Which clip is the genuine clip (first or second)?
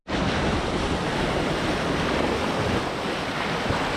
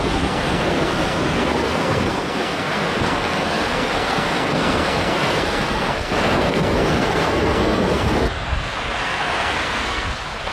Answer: first